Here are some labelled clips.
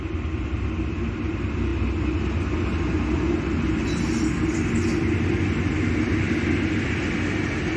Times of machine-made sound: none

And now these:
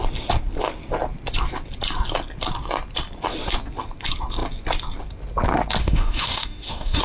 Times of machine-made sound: 5.8-7.0 (autoencoder, DAC-VAE)

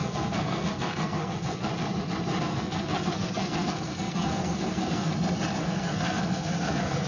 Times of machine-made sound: 0.0-1.7 (codec, SNAC); 2.4-5.1; 5.6-7.1

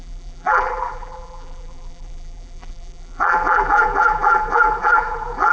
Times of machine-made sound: 0.0-5.5 (vocoder, BigVGAN v2)